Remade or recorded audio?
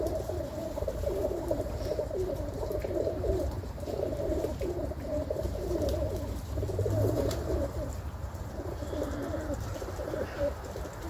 remade